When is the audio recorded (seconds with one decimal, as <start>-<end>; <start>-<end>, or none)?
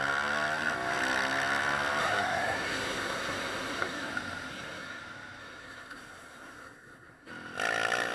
0.0-2.0; 4.1-4.5; 5.0-5.4; 7.3-8.1